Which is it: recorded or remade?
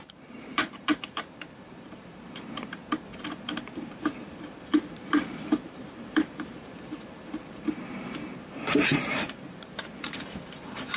remade